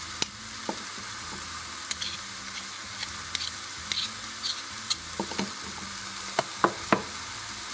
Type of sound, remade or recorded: recorded